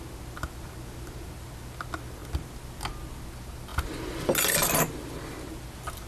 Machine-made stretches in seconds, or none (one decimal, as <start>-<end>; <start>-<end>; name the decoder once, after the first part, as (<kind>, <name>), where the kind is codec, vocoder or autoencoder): none